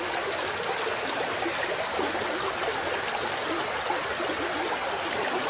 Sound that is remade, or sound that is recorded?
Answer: recorded